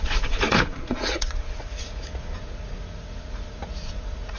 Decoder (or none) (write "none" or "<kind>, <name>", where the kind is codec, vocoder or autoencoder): vocoder, Vocos